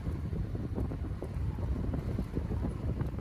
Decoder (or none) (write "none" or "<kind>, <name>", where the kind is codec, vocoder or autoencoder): vocoder, BigVGAN v2